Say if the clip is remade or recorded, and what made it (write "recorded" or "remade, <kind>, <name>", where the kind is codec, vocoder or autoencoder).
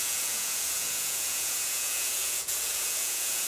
remade, vocoder, Vocos